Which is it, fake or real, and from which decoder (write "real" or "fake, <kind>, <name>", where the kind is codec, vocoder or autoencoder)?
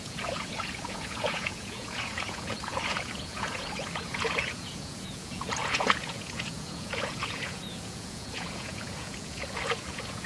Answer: fake, vocoder, Vocos